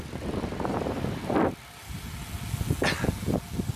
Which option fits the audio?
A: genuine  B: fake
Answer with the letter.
A